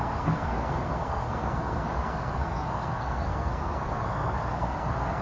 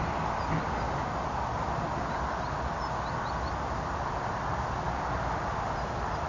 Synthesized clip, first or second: first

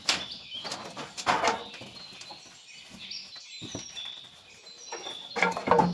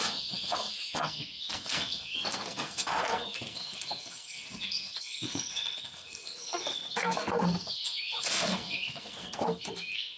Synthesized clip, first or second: second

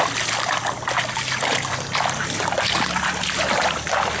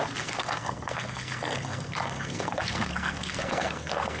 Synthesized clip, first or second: second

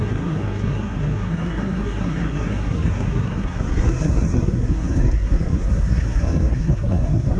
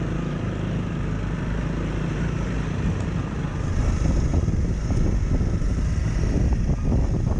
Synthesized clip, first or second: first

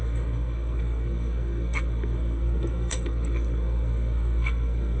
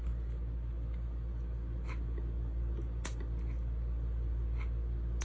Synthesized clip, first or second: first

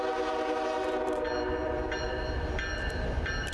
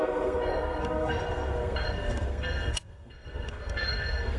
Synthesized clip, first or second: second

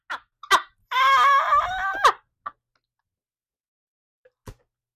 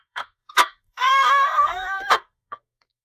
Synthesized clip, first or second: second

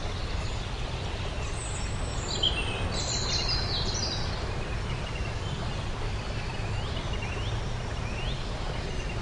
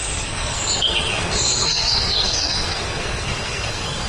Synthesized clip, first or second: second